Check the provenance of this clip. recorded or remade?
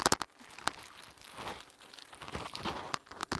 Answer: recorded